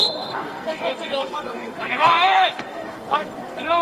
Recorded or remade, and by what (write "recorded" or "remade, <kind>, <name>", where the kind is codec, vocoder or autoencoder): remade, codec, SNAC